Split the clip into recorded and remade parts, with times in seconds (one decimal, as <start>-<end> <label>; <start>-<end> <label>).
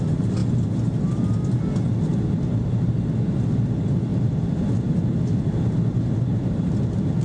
0.0-7.2 recorded